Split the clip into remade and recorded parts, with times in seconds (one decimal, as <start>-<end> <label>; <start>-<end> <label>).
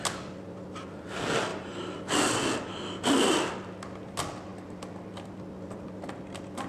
0.0-6.7 recorded